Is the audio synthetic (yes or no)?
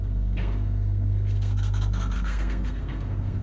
yes